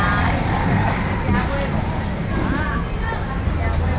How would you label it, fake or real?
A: real